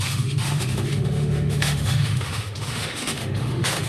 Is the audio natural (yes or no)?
no